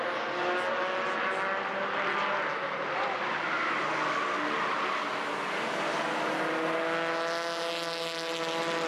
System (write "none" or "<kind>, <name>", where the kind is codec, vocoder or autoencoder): none